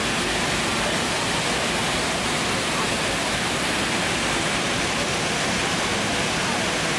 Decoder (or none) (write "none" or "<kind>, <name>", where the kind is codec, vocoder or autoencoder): none